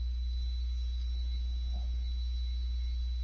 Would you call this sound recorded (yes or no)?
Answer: yes